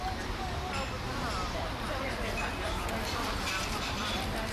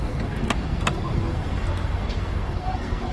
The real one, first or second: first